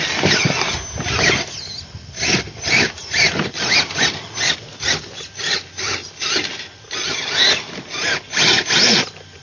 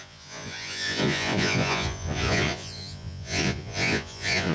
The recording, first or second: first